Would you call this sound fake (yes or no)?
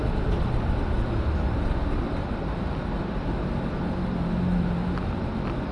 no